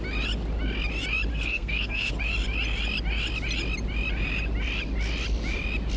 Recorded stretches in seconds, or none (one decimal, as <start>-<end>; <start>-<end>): 0.0-1.3; 2.1-6.0